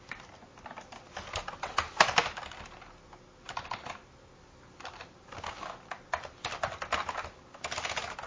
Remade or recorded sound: recorded